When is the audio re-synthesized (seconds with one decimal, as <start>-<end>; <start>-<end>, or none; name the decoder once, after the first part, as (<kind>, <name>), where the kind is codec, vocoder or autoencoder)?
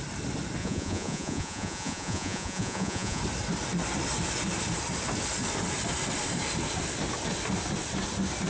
0.6-3.2 (vocoder, Vocos)